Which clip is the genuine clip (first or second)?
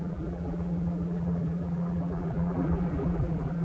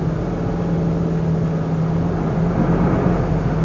second